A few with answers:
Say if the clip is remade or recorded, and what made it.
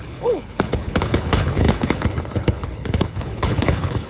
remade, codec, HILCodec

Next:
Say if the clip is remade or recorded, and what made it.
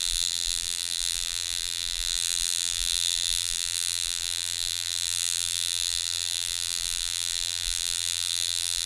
remade, vocoder, BigVGAN v2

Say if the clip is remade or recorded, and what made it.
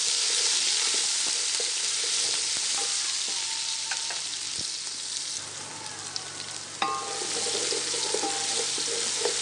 recorded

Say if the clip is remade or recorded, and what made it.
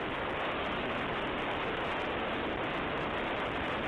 recorded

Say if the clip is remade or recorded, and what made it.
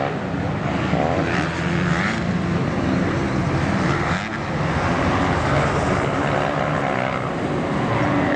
recorded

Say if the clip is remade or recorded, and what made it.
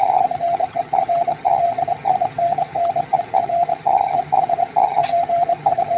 remade, vocoder, HiFi-GAN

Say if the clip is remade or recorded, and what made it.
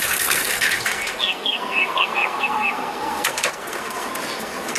remade, codec, SNAC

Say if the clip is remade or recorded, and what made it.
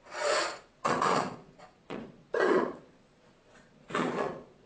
remade, vocoder, Vocos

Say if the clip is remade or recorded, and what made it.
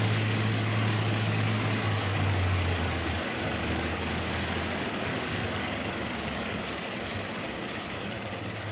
remade, codec, DAC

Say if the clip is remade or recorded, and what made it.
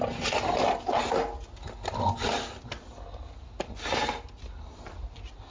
recorded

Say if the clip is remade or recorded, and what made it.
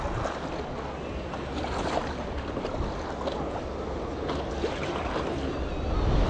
recorded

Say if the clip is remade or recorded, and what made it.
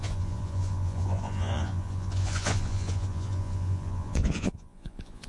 remade, vocoder, Vocos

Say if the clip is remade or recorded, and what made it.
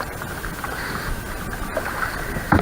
recorded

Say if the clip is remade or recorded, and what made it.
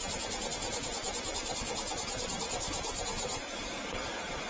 recorded